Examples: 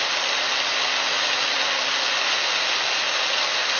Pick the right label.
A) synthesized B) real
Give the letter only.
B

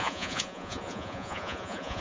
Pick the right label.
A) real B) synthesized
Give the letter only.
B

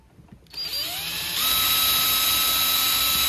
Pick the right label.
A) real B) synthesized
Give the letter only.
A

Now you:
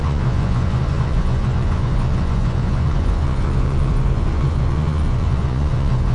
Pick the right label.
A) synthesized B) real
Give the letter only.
A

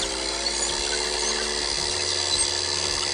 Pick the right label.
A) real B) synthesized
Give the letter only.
A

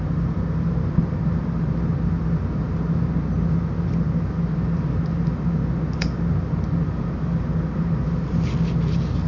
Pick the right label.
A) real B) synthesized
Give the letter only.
A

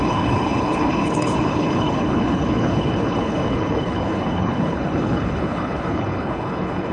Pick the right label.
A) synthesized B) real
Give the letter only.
A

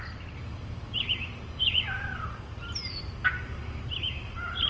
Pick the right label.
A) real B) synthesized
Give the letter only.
A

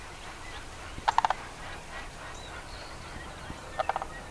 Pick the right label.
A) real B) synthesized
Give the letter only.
A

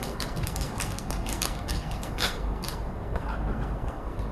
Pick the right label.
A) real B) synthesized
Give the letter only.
B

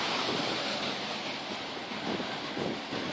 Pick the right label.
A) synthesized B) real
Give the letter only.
A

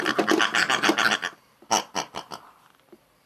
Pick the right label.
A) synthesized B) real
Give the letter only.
B